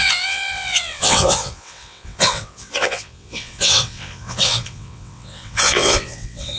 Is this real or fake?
fake